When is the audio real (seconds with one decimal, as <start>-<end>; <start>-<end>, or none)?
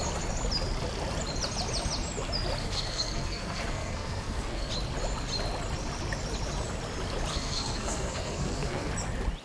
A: 0.0-2.6; 4.7-7.3; 8.9-9.4